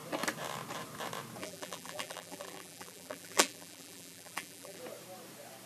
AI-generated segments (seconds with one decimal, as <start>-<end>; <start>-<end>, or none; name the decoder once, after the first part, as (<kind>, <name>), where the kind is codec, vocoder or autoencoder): 1.4-4.8 (vocoder, BigVGAN v2)